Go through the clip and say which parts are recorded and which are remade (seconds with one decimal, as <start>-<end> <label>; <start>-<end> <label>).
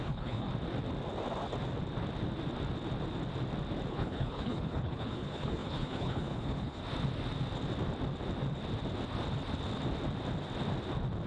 0.0-0.5 remade; 0.5-3.9 recorded; 3.9-6.8 remade; 6.8-11.3 recorded